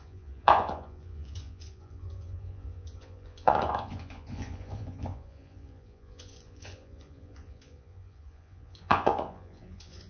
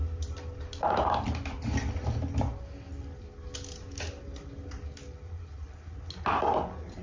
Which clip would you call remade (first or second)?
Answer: first